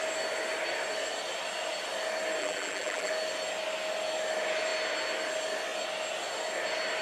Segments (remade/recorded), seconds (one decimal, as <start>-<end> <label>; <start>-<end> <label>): 0.0-2.4 recorded; 2.4-3.1 remade; 3.1-7.0 recorded